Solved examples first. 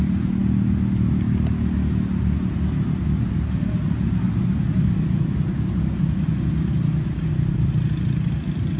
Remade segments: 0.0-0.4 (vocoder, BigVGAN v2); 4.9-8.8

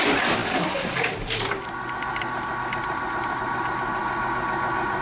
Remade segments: 0.4-3.4 (vocoder, BigVGAN v2)

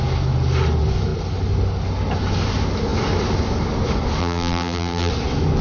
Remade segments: 4.2-5.1 (vocoder, BigVGAN v2)

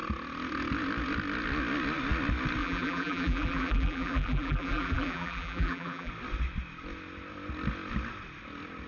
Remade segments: 2.6-6.1 (vocoder, BigVGAN v2)